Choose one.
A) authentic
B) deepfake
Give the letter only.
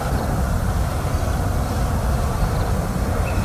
B